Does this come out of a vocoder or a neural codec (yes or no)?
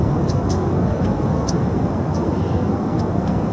yes